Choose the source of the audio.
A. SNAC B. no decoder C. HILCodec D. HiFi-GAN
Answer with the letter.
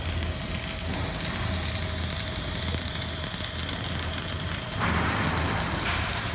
B